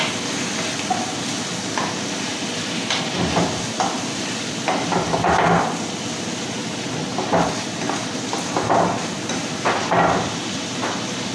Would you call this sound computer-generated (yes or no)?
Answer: no